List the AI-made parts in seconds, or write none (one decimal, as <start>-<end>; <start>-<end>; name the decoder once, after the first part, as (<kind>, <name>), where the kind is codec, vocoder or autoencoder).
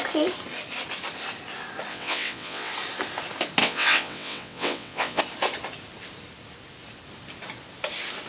1.9-2.7 (vocoder, WaveNeXt); 3.6-5.2